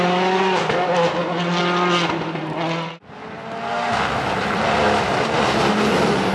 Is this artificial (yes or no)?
no